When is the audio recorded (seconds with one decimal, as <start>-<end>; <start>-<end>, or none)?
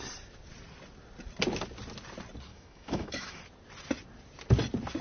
0.0-2.5; 3.4-5.0